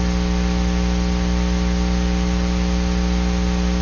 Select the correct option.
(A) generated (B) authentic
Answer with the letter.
B